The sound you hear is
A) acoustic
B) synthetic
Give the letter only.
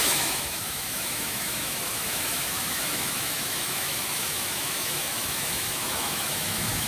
B